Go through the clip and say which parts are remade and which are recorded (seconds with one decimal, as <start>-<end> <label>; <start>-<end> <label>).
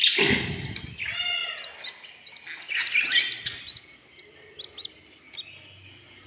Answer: 0.0-6.3 recorded